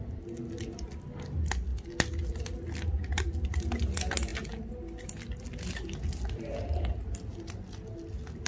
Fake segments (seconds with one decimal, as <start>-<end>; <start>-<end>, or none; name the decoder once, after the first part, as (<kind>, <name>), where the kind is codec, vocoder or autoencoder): none